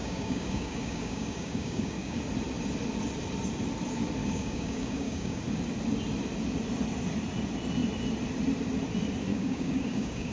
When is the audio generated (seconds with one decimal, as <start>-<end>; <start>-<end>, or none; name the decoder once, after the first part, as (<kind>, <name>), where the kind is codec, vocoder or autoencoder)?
0.0-2.2 (codec, DAC); 4.2-5.4; 9.3-10.3